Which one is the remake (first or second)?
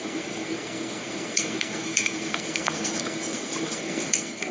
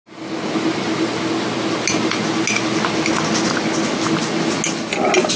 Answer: first